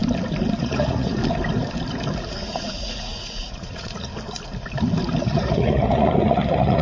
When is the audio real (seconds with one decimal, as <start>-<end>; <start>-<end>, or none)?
0.0-0.6; 1.2-2.3; 4.1-5.2